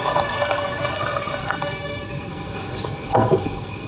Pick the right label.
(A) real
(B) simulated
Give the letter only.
B